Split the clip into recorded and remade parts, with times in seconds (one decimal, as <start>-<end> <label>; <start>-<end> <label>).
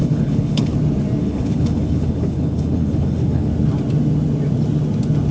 0.0-0.7 remade; 0.7-1.2 recorded; 1.2-3.5 remade; 3.5-5.3 recorded